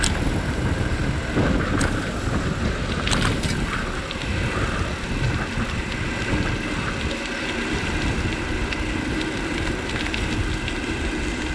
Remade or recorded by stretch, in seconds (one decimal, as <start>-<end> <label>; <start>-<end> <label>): 0.0-11.5 recorded